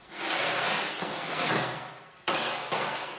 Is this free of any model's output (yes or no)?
no